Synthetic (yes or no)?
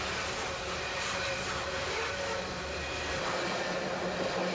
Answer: no